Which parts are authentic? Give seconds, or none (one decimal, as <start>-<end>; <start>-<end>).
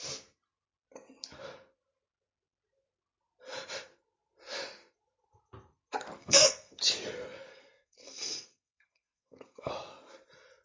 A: 0.0-6.2; 6.8-7.5; 9.7-10.6